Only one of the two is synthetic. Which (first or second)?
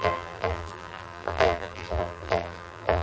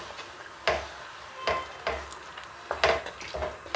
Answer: first